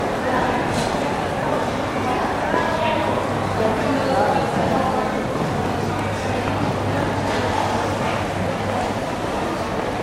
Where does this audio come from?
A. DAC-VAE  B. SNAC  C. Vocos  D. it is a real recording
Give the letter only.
D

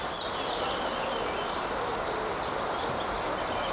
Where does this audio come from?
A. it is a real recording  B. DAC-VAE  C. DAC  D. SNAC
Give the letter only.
A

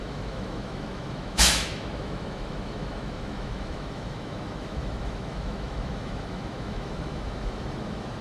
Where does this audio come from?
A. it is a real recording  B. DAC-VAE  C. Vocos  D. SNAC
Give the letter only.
B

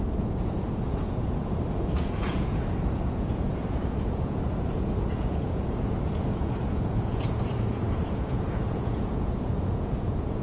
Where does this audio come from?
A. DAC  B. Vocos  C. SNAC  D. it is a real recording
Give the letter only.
B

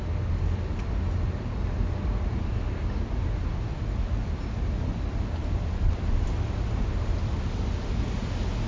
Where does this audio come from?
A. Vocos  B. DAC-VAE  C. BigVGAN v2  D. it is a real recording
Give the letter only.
D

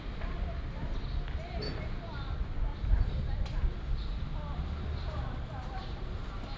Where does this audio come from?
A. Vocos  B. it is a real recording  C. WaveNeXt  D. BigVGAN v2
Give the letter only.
B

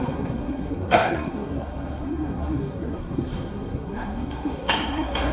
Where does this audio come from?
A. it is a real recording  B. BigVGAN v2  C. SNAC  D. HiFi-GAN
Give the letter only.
C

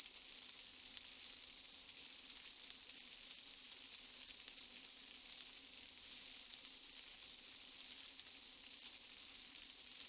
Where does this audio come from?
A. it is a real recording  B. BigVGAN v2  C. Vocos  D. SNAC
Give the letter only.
A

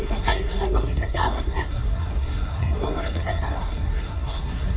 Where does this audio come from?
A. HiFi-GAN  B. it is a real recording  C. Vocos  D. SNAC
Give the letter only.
D